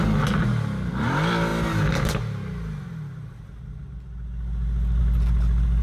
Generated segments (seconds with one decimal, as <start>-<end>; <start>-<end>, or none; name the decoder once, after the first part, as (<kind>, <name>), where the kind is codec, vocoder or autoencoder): none